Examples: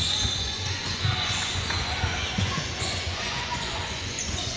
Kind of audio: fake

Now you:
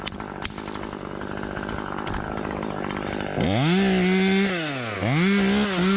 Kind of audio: real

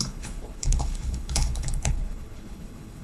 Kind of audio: fake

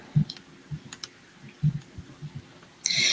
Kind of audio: real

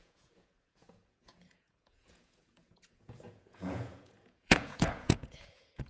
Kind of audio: fake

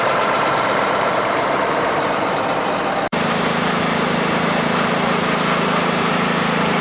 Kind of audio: fake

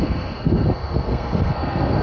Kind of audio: fake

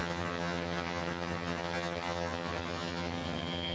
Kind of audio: fake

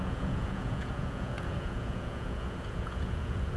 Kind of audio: fake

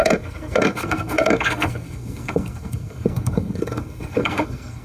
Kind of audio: fake